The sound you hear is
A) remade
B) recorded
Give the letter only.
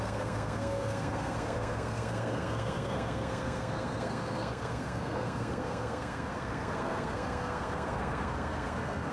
A